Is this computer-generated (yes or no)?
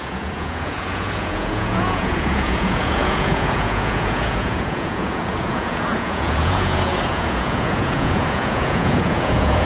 yes